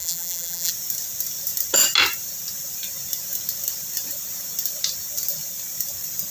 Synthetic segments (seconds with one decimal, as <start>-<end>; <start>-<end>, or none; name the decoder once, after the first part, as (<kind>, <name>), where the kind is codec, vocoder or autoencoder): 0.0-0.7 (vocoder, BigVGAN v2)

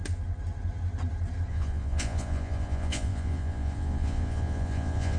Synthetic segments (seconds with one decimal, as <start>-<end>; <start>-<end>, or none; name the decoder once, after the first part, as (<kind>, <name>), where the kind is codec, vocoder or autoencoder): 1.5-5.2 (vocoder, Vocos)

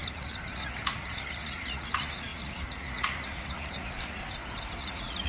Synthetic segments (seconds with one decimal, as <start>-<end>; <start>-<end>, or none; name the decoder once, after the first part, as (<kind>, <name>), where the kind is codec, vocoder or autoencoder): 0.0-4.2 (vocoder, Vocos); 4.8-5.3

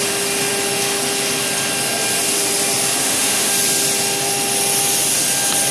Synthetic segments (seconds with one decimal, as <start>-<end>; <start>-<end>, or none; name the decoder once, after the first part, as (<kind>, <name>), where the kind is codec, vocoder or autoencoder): 3.0-3.5 (autoencoder, DAC-VAE)

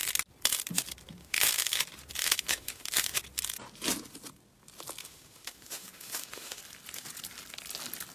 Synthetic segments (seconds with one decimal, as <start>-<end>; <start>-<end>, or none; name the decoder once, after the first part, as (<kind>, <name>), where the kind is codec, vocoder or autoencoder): 1.2-1.8 (autoencoder, DAC-VAE); 2.2-3.2; 5.0-6.6

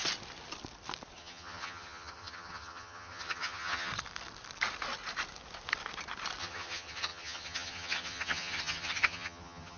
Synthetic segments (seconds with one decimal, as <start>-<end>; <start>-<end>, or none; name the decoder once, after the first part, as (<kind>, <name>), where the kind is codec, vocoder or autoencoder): 1.2-3.9 (vocoder, HiFi-GAN); 6.4-9.8

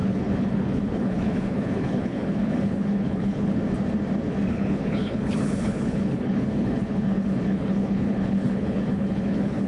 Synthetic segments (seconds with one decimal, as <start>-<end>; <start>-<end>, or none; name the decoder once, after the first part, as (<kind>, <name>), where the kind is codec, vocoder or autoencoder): 0.0-3.6 (codec, HILCodec); 4.5-9.7